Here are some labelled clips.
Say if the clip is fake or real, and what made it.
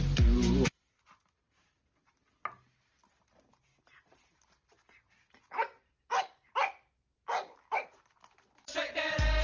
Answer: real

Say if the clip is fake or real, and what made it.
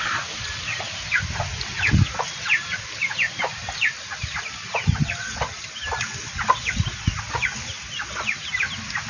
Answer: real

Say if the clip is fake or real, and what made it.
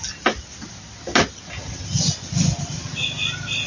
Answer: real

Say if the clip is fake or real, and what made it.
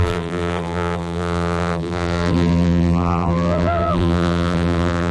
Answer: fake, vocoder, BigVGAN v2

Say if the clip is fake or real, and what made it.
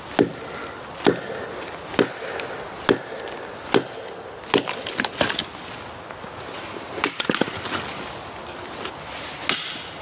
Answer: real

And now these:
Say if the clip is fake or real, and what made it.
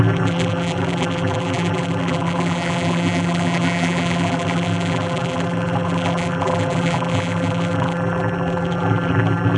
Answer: fake, vocoder, BigVGAN v2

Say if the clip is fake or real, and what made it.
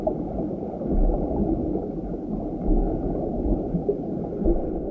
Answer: real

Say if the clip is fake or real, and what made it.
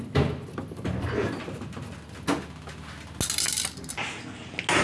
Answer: real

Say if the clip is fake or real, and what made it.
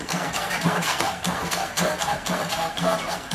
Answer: fake, codec, SNAC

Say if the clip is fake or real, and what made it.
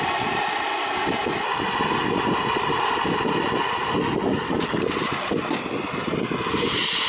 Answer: real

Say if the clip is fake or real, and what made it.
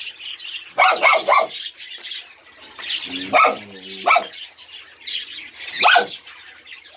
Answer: real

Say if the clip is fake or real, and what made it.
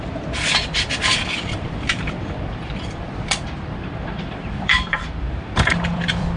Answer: fake, vocoder, BigVGAN v2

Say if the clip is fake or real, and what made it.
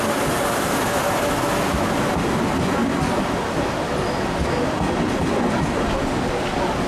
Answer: real